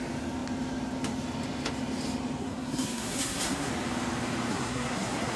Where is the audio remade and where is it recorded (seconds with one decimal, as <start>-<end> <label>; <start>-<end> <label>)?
0.0-2.4 recorded; 2.4-3.7 remade; 3.7-4.5 recorded; 4.5-5.4 remade